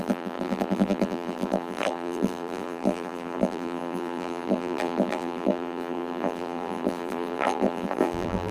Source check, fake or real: fake